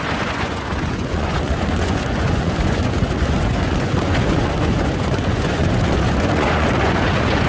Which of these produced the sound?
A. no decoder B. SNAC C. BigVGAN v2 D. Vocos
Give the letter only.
D